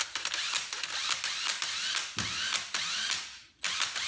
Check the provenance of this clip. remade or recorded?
recorded